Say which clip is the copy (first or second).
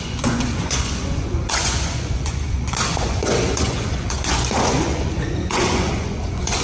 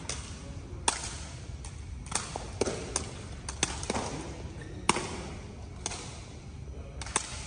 first